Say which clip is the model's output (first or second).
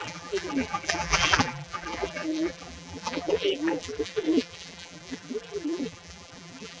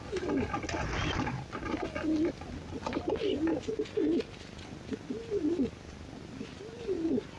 first